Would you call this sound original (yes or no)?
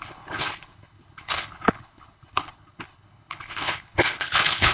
no